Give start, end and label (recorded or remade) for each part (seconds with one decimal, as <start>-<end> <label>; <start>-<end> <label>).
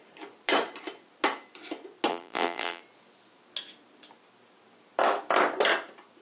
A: 0.0-2.1 recorded; 2.1-2.8 remade; 2.8-6.2 recorded